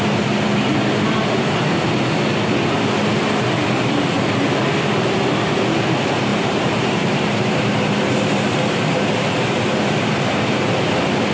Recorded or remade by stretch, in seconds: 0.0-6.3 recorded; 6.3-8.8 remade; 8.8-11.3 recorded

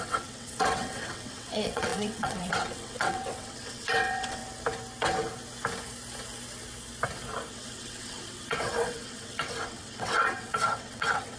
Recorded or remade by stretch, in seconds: 0.0-4.4 remade; 4.4-7.5 recorded; 7.5-11.4 remade

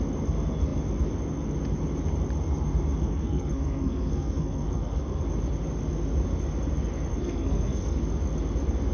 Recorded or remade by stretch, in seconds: 0.0-3.0 recorded; 3.0-5.2 remade; 5.2-7.1 recorded; 7.1-8.0 remade; 8.0-8.9 recorded

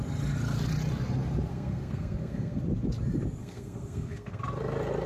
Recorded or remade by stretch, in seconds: 0.0-1.5 recorded; 1.5-2.6 remade; 2.6-3.4 recorded; 3.4-4.4 remade; 4.4-5.1 recorded

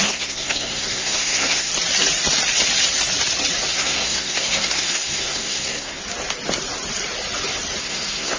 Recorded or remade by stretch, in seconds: 0.0-1.7 remade; 1.7-3.7 recorded; 3.7-6.0 remade; 6.0-7.8 recorded; 7.8-8.4 remade

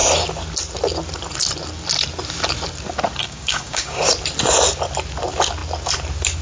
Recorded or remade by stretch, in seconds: 0.0-3.2 recorded; 3.2-4.0 remade; 4.0-6.4 recorded

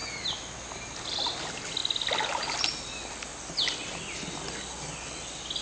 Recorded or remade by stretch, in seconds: 0.0-5.6 recorded

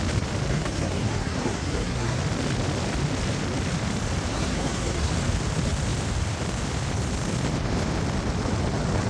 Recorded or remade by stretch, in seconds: 0.0-0.5 recorded; 0.5-2.2 remade; 2.2-4.3 recorded; 4.3-5.1 remade; 5.1-9.1 recorded